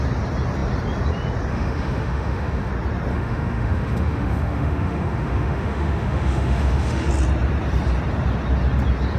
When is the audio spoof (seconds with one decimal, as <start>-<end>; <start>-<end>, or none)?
1.5-2.7; 3.1-7.1